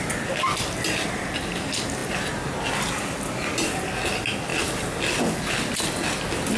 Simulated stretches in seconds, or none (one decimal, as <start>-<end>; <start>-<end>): none